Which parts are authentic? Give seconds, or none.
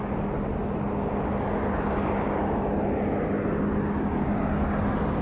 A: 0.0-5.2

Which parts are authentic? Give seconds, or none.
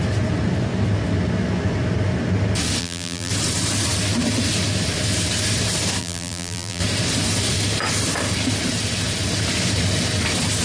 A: 0.0-2.8; 3.3-6.0; 6.8-10.6